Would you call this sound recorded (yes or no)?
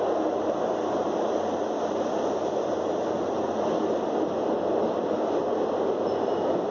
yes